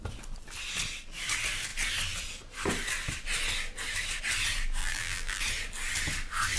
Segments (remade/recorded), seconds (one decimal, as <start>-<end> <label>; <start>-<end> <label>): 0.0-4.8 recorded; 4.8-5.4 remade; 5.4-6.6 recorded